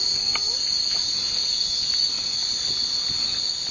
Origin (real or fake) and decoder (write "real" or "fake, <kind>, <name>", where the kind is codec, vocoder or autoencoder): real